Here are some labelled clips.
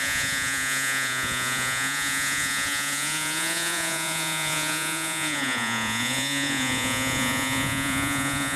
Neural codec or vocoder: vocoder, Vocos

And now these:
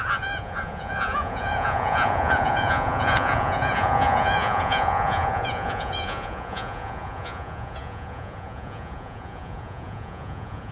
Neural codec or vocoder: vocoder, Vocos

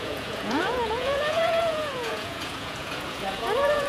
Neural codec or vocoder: vocoder, Vocos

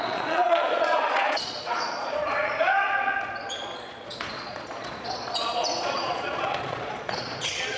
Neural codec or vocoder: vocoder, Vocos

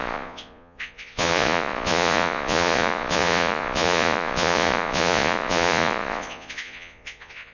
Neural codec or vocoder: vocoder, Vocos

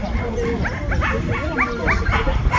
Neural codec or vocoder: none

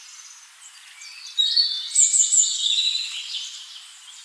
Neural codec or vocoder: none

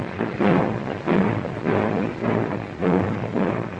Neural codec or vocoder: vocoder, Vocos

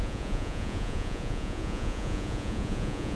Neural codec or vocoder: vocoder, Vocos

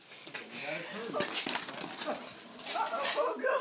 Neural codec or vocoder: none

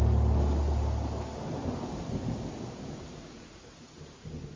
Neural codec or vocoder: none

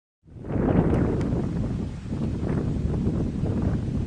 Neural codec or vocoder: none